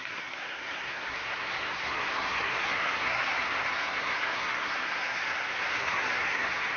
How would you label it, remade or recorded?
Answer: remade